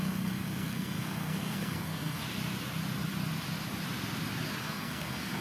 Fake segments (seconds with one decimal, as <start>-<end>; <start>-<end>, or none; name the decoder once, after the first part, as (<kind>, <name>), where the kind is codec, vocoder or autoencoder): 0.0-2.2 (codec, SNAC); 4.6-5.4